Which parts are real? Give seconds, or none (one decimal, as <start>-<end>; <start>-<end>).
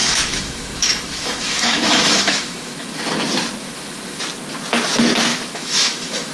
3.0-3.6; 4.2-5.3